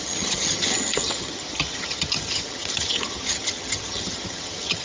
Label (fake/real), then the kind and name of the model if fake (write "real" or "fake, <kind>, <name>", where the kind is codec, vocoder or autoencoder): fake, vocoder, HiFi-GAN